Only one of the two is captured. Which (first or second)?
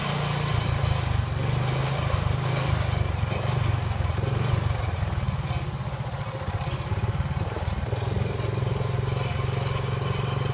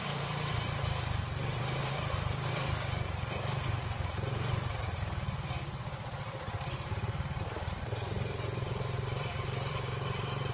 first